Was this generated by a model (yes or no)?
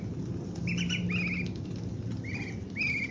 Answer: no